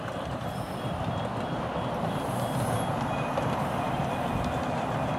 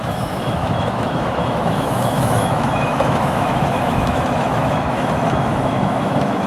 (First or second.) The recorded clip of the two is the first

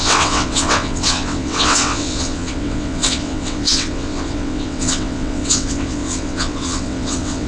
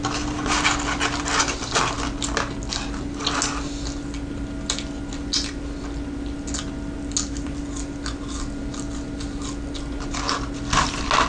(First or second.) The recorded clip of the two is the second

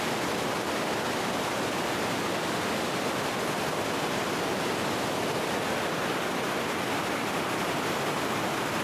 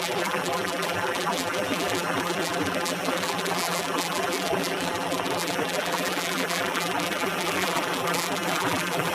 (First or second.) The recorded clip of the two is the first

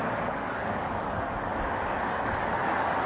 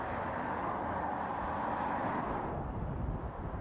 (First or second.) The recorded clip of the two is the second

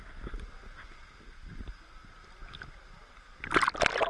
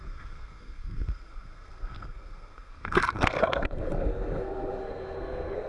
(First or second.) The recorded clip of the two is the first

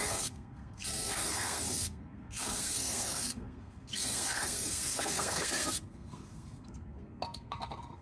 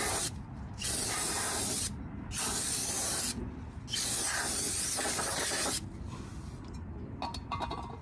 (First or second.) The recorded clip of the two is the second